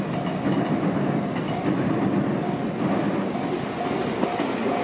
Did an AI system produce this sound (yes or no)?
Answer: no